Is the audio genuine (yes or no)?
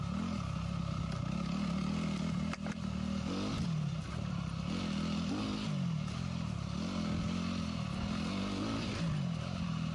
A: yes